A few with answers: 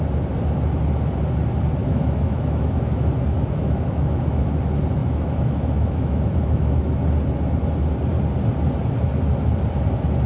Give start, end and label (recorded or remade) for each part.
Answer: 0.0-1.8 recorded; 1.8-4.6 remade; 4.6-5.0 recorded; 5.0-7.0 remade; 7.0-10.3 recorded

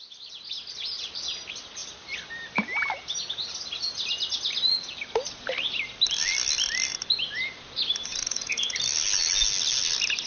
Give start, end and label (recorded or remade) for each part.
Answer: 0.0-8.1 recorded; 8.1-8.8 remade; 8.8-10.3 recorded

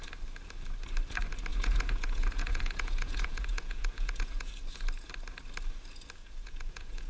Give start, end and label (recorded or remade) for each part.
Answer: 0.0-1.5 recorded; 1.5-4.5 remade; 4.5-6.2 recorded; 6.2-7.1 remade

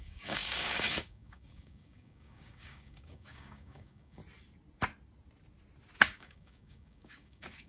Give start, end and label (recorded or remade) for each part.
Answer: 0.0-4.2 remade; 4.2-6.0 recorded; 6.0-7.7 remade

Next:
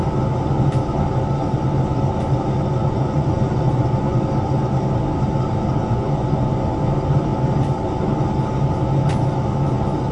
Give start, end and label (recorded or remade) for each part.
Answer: 0.0-2.8 recorded; 2.8-4.2 remade; 4.2-5.8 recorded; 5.8-6.5 remade; 6.5-10.1 recorded